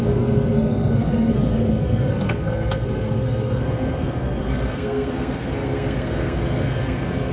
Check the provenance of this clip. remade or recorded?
remade